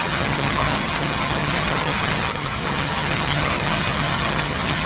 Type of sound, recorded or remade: remade